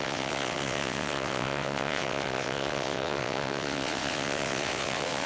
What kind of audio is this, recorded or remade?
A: remade